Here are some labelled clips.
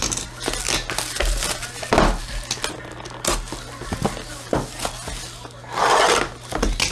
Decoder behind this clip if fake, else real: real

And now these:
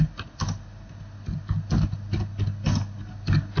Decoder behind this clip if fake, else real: real